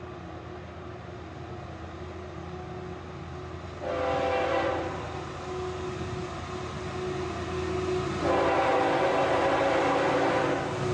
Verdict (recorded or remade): recorded